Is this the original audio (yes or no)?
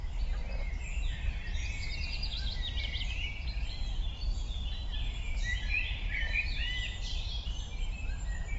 no